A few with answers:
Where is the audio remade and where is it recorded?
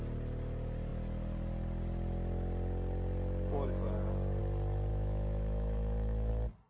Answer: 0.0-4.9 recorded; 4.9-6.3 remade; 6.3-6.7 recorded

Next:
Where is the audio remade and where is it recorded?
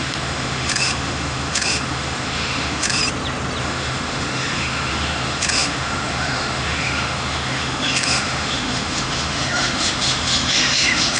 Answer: 0.0-3.0 remade; 3.0-3.6 recorded; 3.6-11.2 remade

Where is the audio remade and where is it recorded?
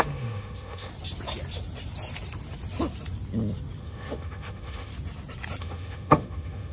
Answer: 0.0-0.9 remade; 0.9-3.8 recorded; 3.8-4.9 remade; 4.9-5.6 recorded; 5.6-6.7 remade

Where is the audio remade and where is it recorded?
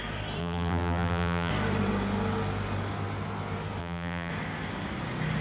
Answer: 0.0-0.4 recorded; 0.4-1.5 remade; 1.5-3.8 recorded; 3.8-4.3 remade; 4.3-5.4 recorded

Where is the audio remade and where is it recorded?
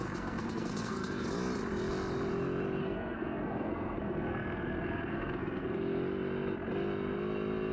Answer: 0.0-1.3 remade; 1.3-2.8 recorded; 2.8-5.8 remade; 5.8-7.7 recorded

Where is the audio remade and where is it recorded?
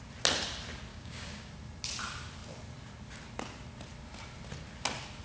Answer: 0.0-0.9 recorded; 0.9-1.5 remade; 1.5-5.2 recorded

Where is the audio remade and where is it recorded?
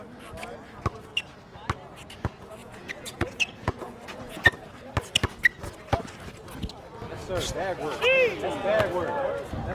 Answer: 0.0-2.6 recorded; 2.6-4.5 remade; 4.5-9.7 recorded